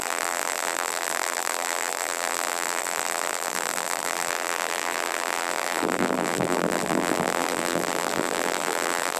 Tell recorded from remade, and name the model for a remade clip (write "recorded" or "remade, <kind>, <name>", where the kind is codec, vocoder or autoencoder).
remade, vocoder, BigVGAN v2